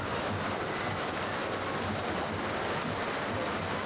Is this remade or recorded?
recorded